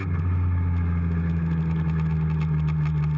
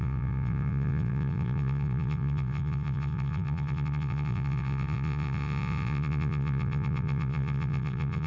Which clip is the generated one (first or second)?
second